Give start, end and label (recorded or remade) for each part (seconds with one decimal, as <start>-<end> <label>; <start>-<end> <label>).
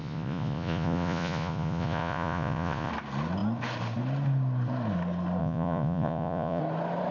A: 0.0-2.9 remade; 2.9-5.4 recorded; 5.4-6.6 remade; 6.6-7.1 recorded